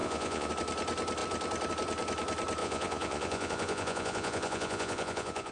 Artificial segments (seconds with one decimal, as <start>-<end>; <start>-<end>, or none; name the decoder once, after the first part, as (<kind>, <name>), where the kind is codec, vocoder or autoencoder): 0.0-0.5 (vocoder, Vocos); 2.6-5.5